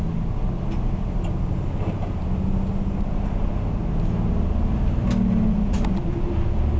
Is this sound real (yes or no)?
yes